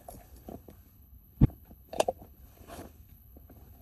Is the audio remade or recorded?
remade